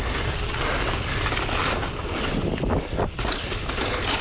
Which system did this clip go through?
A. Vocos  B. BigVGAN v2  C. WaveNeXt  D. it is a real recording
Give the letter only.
D